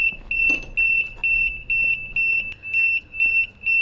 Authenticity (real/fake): real